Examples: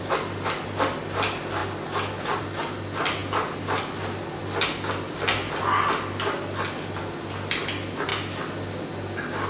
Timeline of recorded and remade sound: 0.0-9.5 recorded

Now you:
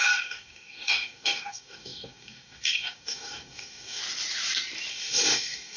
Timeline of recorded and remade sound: 0.0-4.0 remade; 4.0-4.9 recorded; 4.9-5.8 remade